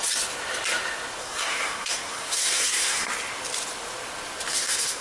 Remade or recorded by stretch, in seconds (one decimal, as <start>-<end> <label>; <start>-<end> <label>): 0.0-1.2 recorded; 1.2-3.1 remade; 3.1-4.5 recorded; 4.5-5.0 remade